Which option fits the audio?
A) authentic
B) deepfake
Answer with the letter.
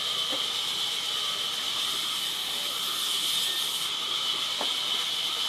A